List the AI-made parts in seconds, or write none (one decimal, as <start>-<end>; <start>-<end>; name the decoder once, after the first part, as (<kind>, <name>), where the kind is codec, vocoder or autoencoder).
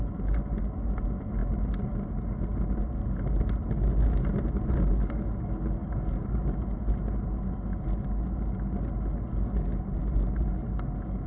none